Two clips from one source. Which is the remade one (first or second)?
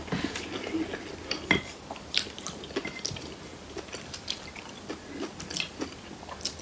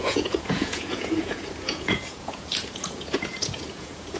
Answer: second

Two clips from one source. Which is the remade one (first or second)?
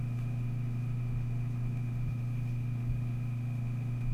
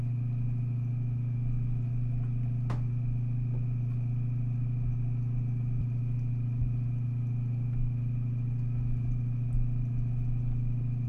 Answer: first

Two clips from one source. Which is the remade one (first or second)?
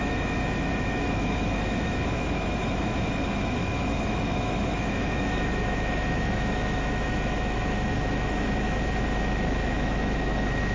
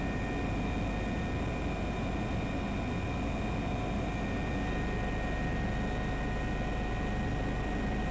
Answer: first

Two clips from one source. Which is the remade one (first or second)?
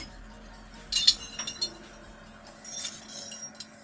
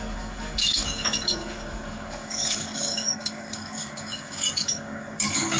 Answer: second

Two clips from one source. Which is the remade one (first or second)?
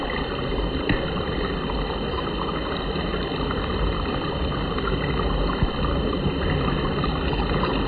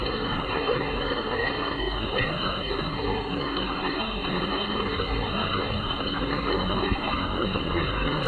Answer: second